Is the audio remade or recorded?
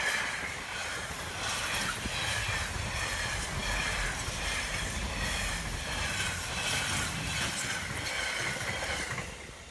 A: recorded